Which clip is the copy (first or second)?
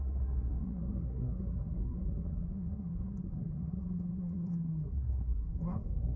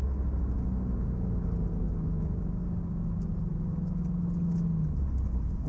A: first